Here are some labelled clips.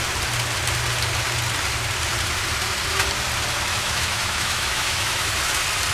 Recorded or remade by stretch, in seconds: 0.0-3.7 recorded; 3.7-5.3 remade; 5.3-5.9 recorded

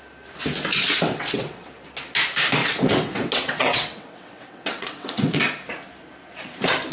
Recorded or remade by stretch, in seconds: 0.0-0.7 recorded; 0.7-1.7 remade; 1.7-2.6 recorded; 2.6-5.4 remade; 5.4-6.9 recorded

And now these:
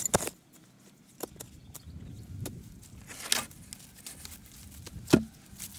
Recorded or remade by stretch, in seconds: 0.0-5.8 recorded

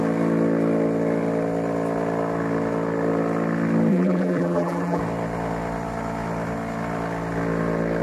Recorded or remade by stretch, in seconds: 0.0-3.9 recorded; 3.9-5.0 remade; 5.0-8.0 recorded

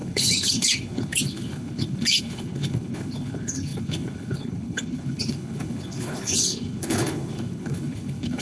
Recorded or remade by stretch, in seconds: 0.0-8.4 remade

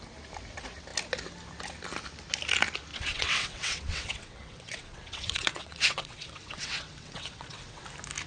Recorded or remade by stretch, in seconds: 0.0-2.9 recorded; 2.9-7.8 remade; 7.8-8.3 recorded

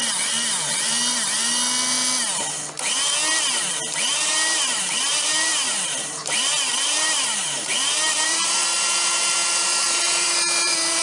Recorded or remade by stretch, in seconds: 0.0-4.1 recorded; 4.1-11.0 remade

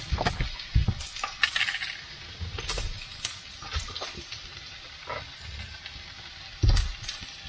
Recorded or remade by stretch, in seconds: 0.0-7.5 recorded